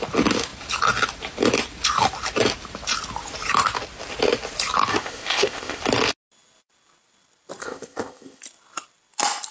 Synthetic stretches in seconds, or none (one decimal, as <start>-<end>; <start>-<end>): 4.9-5.8; 7.6-8.4